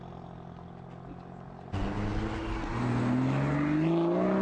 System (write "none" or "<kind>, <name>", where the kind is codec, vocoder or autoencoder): none